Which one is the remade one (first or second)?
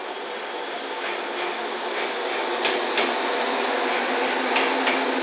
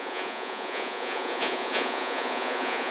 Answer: second